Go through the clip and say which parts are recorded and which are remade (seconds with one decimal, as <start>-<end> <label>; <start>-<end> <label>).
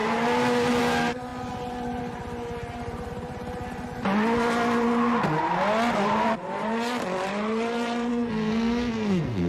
0.0-8.1 recorded; 8.1-9.5 remade